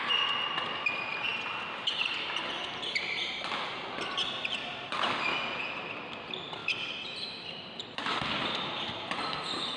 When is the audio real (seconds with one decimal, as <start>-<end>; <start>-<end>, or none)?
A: 0.0-9.8